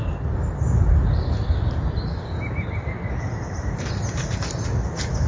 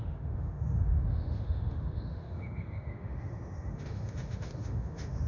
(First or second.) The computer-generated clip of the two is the second